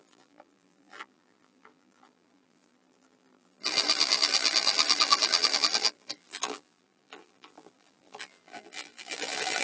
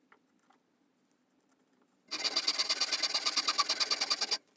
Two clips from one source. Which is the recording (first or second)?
second